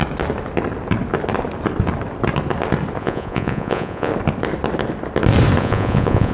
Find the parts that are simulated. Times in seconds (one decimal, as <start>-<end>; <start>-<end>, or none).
3.0-4.1; 5.6-6.3